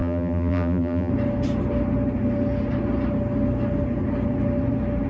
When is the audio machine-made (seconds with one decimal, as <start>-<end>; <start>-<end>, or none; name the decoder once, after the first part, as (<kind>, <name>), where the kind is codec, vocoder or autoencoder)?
0.0-1.1 (vocoder, BigVGAN v2)